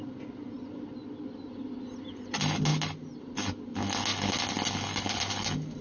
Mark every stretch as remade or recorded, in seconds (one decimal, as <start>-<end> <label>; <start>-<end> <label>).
0.0-5.8 recorded